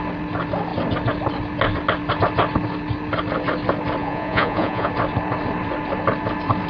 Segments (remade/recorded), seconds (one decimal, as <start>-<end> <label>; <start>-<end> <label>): 0.0-4.0 recorded; 4.0-4.9 remade; 4.9-6.7 recorded